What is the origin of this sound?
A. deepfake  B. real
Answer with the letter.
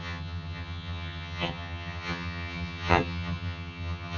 A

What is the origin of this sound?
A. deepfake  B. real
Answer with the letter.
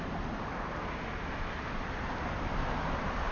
B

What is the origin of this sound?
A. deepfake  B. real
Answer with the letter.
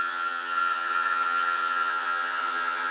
A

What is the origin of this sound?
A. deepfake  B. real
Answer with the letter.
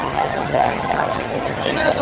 A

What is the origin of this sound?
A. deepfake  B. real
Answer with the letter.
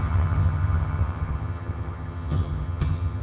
A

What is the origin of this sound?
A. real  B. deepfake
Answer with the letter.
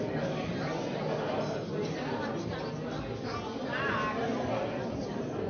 A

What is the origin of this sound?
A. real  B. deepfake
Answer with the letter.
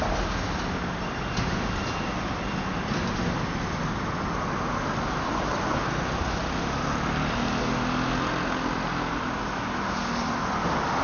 A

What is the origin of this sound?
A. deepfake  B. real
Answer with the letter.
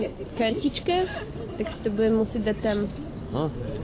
B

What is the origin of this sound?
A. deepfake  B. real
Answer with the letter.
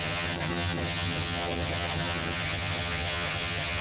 A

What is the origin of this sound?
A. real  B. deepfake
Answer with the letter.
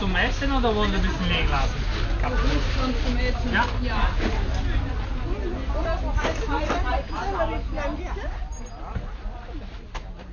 A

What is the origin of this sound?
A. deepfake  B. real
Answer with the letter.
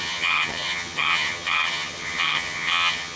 A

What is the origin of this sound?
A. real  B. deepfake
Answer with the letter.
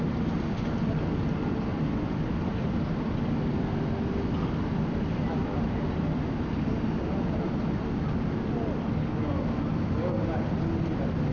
A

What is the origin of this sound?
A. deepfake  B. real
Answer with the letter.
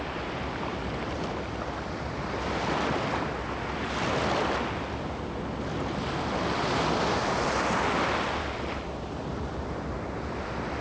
B